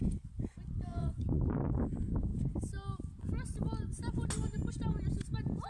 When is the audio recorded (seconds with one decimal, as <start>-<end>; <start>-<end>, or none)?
0.0-0.9; 1.8-5.7